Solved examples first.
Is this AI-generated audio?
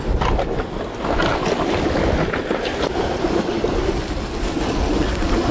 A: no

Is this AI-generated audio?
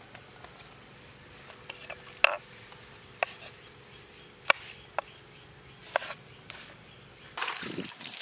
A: no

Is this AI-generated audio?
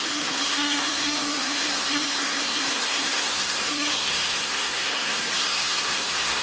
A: yes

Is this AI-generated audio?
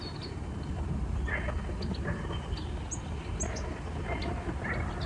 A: no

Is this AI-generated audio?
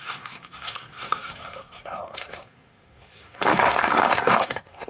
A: yes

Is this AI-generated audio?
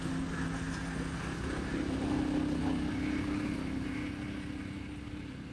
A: no